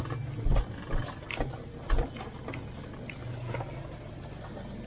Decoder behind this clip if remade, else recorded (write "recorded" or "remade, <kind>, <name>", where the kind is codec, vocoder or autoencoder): recorded